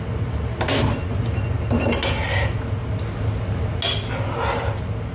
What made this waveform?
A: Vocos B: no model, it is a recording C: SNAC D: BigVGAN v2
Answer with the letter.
B